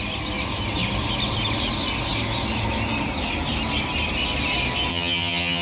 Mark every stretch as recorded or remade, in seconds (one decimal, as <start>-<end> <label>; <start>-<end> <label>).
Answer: 0.0-4.9 recorded; 4.9-5.6 remade